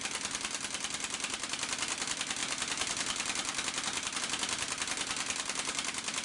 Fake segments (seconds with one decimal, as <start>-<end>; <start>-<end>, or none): none